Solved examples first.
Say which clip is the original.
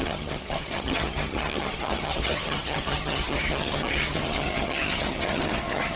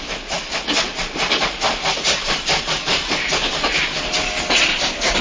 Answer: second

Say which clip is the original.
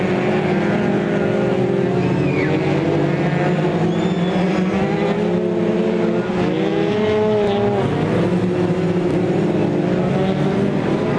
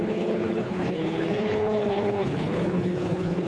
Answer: first